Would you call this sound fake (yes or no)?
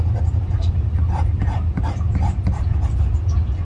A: yes